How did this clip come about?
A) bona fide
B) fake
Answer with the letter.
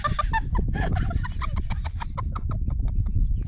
A